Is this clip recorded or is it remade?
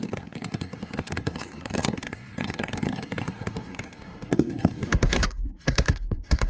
remade